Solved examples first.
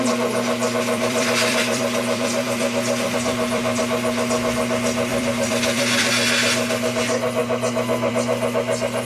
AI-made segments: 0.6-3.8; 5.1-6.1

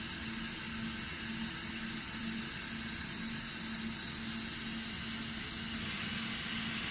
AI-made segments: none

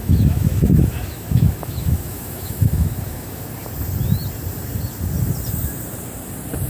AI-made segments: 0.0-3.5

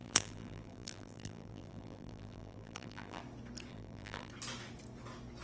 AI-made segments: 0.0-3.2; 3.7-4.3

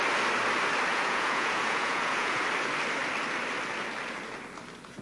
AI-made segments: 0.9-2.4

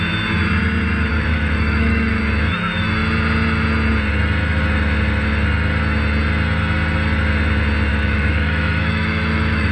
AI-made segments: 1.1-2.2; 7.9-9.7